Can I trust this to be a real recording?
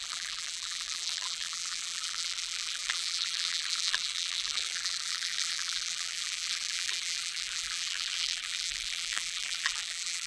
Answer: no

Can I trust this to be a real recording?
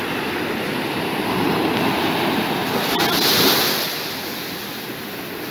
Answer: yes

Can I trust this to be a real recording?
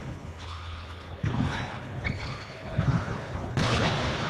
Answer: no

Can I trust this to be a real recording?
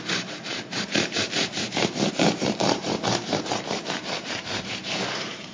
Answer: no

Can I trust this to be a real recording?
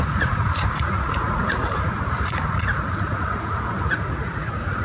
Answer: no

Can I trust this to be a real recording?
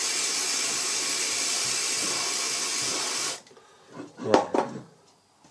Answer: yes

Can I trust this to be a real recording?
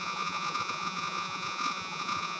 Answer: no